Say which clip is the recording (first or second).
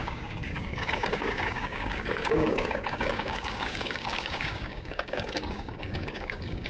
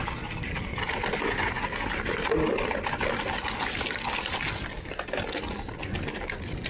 second